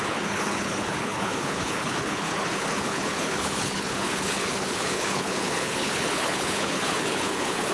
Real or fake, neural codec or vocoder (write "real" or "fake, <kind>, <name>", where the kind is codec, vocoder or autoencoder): fake, codec, HILCodec